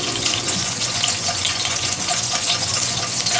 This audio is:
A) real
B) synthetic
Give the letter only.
B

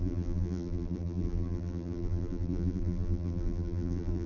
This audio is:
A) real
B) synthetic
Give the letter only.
B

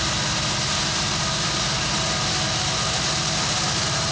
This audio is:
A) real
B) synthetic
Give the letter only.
A